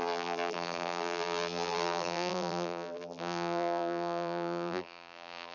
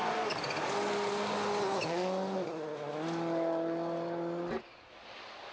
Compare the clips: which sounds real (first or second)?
second